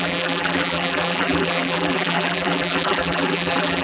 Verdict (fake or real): fake